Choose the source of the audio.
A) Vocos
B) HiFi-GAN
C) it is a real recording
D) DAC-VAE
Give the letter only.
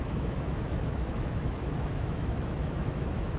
D